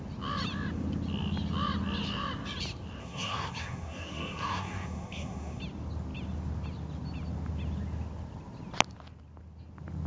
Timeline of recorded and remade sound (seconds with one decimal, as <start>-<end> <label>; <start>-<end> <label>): 0.0-3.0 recorded; 3.0-5.6 remade; 5.6-10.1 recorded

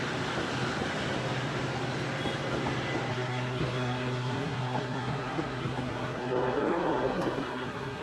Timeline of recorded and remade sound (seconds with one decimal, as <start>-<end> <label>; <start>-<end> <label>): 0.0-3.1 recorded; 3.1-8.0 remade

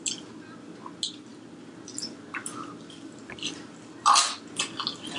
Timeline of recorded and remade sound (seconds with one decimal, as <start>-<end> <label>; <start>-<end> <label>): 0.0-5.2 recorded

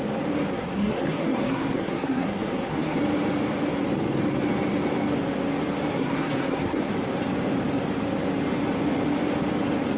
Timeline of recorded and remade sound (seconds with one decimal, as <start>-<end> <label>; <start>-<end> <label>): 0.0-0.5 recorded; 0.5-3.0 remade; 3.0-5.9 recorded; 5.9-6.9 remade; 6.9-10.0 recorded

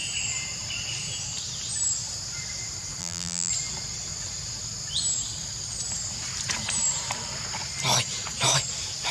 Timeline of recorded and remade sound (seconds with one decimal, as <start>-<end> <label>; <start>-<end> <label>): 0.0-3.0 recorded; 3.0-3.5 remade; 3.5-9.1 recorded

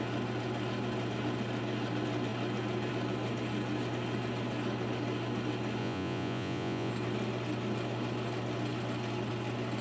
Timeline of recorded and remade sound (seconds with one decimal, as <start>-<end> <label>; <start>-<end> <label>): 0.0-5.8 recorded; 5.8-6.9 remade; 6.9-9.8 recorded

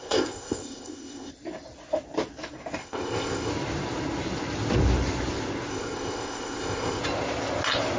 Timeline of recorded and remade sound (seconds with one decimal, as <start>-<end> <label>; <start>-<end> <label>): 0.0-1.3 remade; 1.3-2.8 recorded; 2.8-3.5 remade; 3.5-5.7 recorded; 5.7-7.0 remade; 7.0-8.0 recorded